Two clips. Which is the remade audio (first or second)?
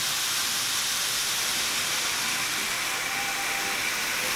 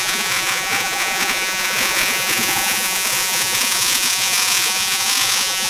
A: second